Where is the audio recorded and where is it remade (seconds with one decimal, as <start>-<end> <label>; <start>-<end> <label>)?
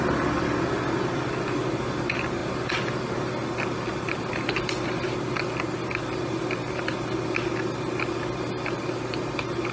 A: 0.0-9.7 recorded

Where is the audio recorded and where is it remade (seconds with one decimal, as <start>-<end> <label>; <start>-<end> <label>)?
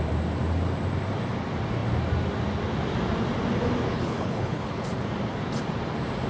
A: 0.0-3.9 recorded; 3.9-4.8 remade; 4.8-6.3 recorded